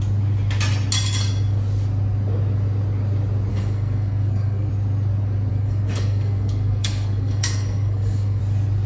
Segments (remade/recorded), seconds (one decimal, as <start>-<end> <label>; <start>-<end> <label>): 0.0-3.5 recorded; 3.5-4.7 remade; 4.7-5.5 recorded; 5.5-8.4 remade; 8.4-8.9 recorded